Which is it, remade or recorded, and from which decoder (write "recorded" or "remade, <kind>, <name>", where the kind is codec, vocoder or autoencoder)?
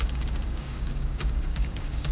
remade, codec, DAC